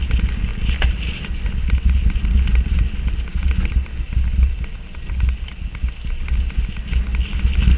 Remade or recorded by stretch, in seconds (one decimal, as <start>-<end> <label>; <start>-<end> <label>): 0.0-7.8 recorded

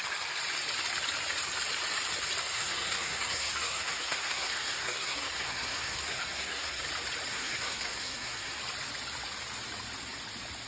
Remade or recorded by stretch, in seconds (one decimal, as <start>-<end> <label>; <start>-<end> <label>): 0.0-2.4 recorded; 2.4-6.8 remade; 6.8-7.3 recorded; 7.3-8.6 remade; 8.6-10.7 recorded

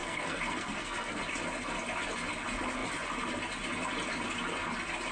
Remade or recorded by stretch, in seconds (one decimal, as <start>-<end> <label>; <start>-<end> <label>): 0.0-1.2 remade; 1.2-5.1 recorded